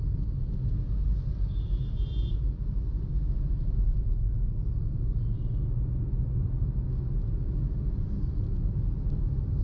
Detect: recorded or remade recorded